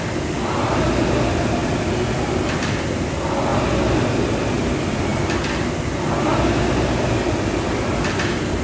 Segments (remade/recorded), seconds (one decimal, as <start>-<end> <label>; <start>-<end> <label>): 0.0-8.6 recorded

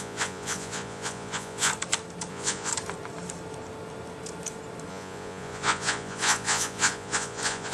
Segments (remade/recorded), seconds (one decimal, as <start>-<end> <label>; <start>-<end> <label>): 0.0-1.7 remade; 1.7-2.3 recorded; 2.3-2.7 remade; 2.7-4.9 recorded; 4.9-7.7 remade

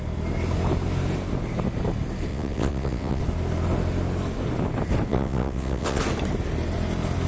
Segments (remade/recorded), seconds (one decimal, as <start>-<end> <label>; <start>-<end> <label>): 0.0-2.3 recorded; 2.3-3.2 remade; 3.2-5.1 recorded; 5.1-6.0 remade; 6.0-7.3 recorded

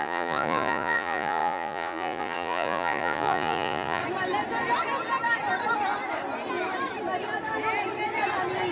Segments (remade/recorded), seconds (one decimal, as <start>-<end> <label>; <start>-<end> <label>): 0.0-4.0 remade; 4.0-8.7 recorded

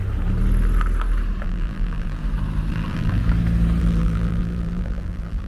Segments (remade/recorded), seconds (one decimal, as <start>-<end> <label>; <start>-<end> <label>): 0.0-1.4 recorded; 1.4-2.2 remade; 2.2-2.7 recorded; 2.7-3.2 remade; 3.2-3.8 recorded; 3.8-5.5 remade

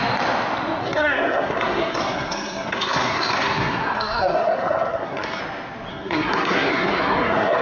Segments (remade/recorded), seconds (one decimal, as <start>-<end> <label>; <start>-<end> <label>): 0.0-0.8 recorded; 0.8-5.4 remade; 5.4-5.9 recorded; 5.9-7.6 remade

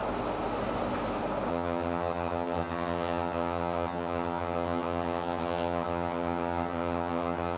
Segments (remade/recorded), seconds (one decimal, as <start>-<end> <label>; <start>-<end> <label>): 0.0-1.5 recorded; 1.5-7.6 remade

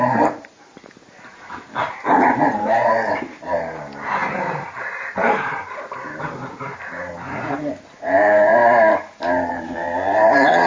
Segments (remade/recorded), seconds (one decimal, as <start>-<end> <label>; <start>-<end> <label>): 0.0-8.5 remade; 8.5-9.5 recorded; 9.5-10.7 remade